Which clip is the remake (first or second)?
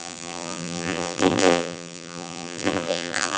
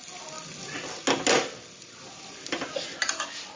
first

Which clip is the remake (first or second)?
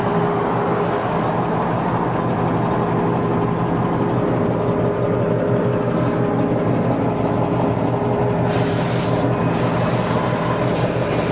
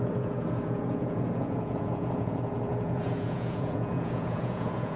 second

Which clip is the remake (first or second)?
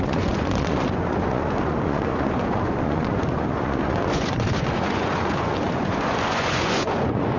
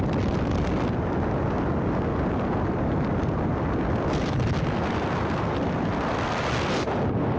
first